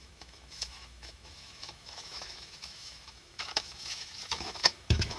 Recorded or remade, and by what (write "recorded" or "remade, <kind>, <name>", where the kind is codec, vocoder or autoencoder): remade, autoencoder, DAC-VAE